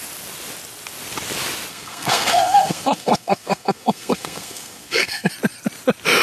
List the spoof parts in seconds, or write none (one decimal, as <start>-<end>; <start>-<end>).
1.7-5.3